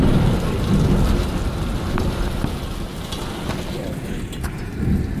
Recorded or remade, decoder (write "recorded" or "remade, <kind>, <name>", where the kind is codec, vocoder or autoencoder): recorded